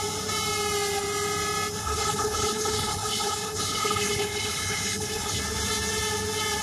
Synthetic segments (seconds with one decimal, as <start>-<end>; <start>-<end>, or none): 1.8-5.4